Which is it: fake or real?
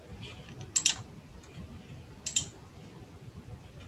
real